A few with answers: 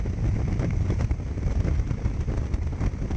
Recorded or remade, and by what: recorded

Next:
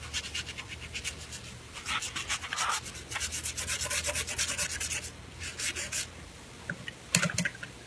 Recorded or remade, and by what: recorded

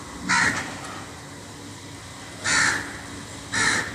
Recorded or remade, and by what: recorded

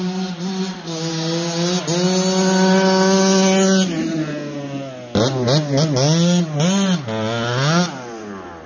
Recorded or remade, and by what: recorded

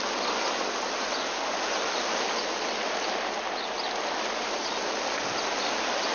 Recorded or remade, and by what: recorded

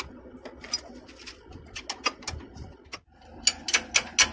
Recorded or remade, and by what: recorded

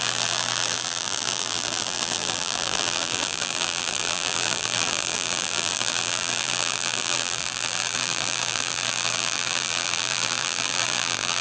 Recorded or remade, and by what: remade, vocoder, BigVGAN v2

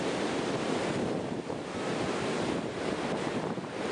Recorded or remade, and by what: recorded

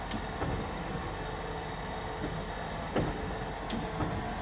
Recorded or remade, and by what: recorded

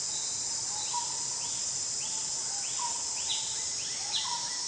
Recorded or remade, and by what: recorded